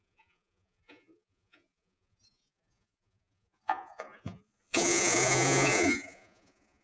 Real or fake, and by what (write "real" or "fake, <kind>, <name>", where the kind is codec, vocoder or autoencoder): fake, vocoder, Vocos